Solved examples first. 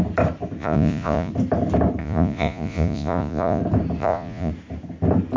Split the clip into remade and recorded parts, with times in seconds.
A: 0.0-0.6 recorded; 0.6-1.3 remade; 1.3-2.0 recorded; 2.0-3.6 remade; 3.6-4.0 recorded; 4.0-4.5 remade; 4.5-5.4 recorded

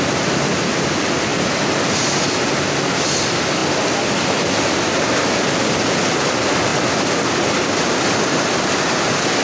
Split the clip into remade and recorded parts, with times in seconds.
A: 0.0-9.4 recorded

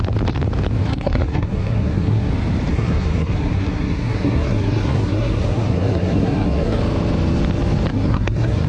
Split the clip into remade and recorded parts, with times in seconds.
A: 0.0-0.8 recorded; 0.8-2.3 remade; 2.3-2.7 recorded; 2.7-6.8 remade; 6.8-7.9 recorded; 7.9-8.7 remade

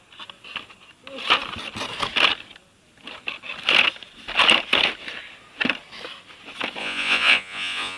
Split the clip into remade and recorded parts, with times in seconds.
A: 0.0-6.8 recorded; 6.8-8.0 remade

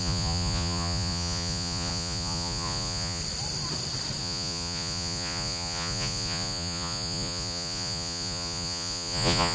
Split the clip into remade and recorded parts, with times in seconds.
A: 0.0-3.2 remade; 3.2-4.2 recorded; 4.2-9.5 remade

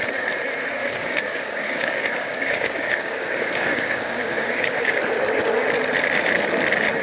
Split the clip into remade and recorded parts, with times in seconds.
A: 0.0-0.8 recorded; 0.8-5.0 remade; 5.0-7.0 recorded